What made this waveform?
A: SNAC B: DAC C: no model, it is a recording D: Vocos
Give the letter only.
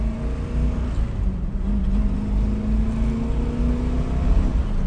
C